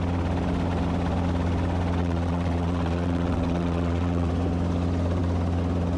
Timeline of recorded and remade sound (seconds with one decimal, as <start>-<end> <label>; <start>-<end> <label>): 0.0-2.0 recorded; 2.0-4.3 remade; 4.3-6.0 recorded